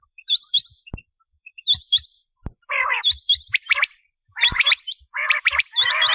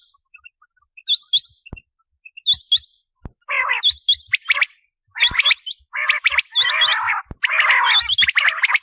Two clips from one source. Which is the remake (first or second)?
first